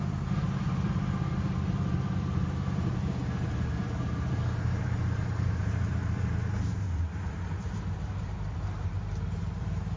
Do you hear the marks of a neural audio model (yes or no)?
yes